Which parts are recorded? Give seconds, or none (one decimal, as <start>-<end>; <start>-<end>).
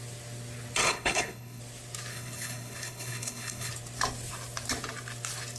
0.0-0.8; 1.6-2.1; 3.7-5.6